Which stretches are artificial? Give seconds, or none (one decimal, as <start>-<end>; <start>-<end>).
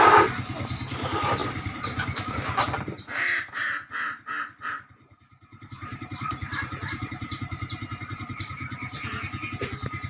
1.4-2.6; 5.5-9.1